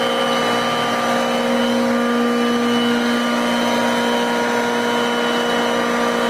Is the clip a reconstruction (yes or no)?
no